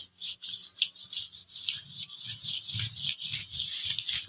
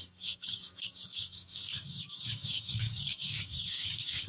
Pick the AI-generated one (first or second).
second